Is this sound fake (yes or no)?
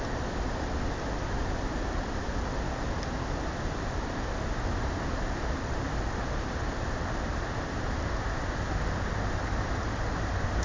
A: no